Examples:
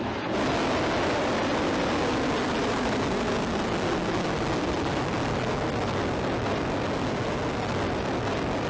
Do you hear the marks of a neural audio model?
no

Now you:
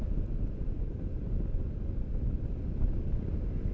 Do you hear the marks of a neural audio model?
no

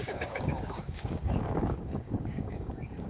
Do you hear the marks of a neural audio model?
yes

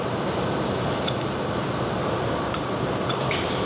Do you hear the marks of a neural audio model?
no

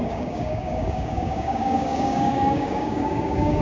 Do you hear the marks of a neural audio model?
yes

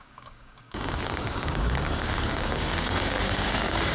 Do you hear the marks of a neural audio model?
yes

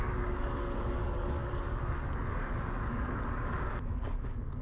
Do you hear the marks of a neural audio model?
yes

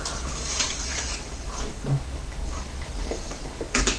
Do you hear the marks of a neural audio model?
yes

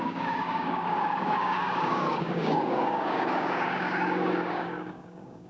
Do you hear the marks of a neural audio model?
yes